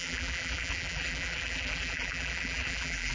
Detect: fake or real fake